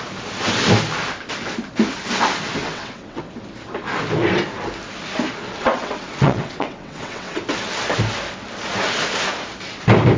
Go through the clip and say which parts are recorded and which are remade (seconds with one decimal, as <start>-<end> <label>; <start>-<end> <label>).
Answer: 0.0-2.6 recorded; 2.6-3.2 remade; 3.2-5.6 recorded; 5.6-7.4 remade; 7.4-10.2 recorded